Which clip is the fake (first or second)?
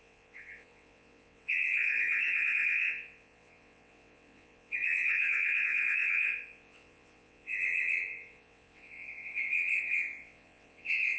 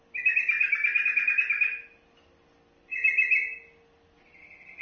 first